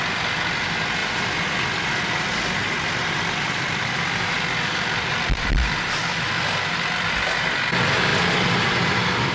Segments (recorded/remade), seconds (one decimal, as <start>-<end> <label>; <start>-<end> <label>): 0.0-2.6 recorded; 2.6-6.0 remade; 6.0-9.3 recorded